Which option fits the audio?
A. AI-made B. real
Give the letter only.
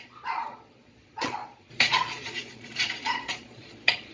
A